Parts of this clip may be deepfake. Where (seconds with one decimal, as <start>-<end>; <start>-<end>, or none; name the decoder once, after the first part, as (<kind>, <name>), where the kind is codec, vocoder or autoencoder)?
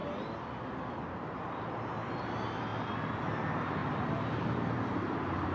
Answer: 3.8-5.0 (vocoder, BigVGAN v2)